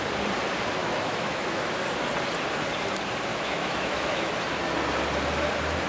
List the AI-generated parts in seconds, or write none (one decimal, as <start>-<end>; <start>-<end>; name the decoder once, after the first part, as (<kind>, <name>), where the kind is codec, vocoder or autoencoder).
0.8-1.8 (autoencoder, DAC-VAE); 3.3-4.3